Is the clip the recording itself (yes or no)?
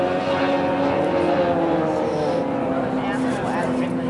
yes